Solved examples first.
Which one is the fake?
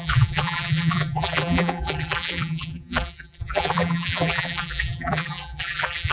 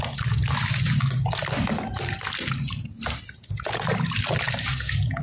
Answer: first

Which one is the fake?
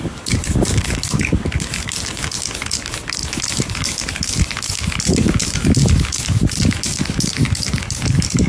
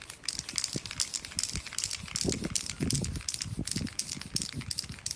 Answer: first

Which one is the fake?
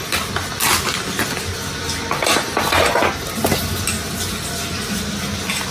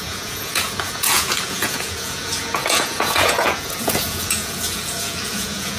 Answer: second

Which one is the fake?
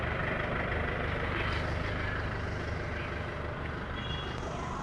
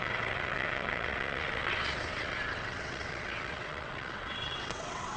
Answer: second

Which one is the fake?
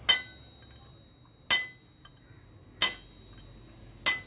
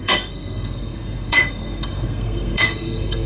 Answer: second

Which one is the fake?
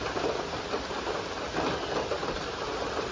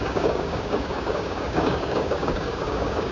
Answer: second